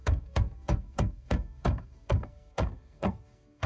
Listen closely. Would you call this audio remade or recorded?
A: remade